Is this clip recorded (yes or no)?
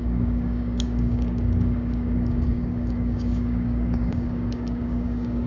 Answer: no